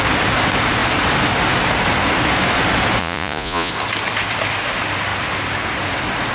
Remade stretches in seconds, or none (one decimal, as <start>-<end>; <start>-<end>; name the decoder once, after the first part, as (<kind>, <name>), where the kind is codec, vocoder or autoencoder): 3.0-3.7 (vocoder, Vocos)